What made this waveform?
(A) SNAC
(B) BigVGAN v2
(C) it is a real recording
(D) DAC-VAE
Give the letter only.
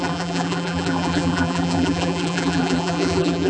B